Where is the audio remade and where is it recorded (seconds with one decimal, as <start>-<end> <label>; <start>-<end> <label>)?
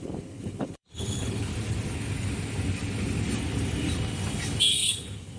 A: 0.0-1.5 remade; 1.5-4.7 recorded; 4.7-5.4 remade